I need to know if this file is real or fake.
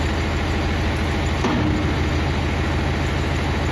real